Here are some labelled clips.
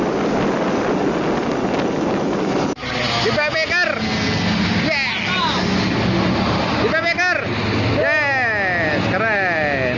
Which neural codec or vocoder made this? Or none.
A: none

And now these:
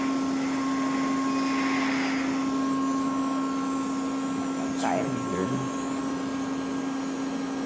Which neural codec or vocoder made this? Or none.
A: none